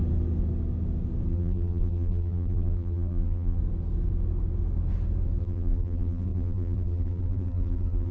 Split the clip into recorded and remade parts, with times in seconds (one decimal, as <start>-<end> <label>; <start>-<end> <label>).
0.0-1.3 recorded; 1.3-3.6 remade; 3.6-5.4 recorded; 5.4-8.1 remade